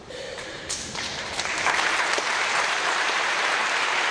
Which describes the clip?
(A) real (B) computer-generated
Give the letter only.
B